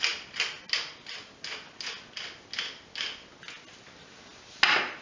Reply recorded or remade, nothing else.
recorded